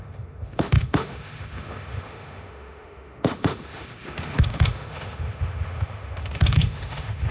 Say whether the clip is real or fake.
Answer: fake